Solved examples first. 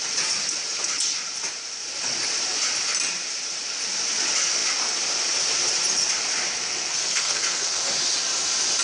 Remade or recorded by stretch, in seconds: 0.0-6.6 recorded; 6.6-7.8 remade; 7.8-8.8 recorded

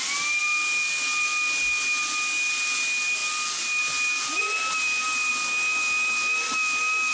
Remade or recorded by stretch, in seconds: 0.0-7.1 recorded

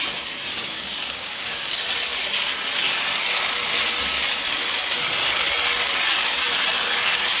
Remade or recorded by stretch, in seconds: 0.0-0.5 recorded; 0.5-1.7 remade; 1.7-7.4 recorded

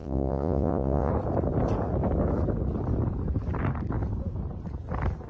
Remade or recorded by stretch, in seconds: 0.0-1.1 remade; 1.1-5.3 recorded